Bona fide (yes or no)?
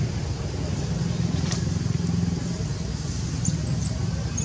yes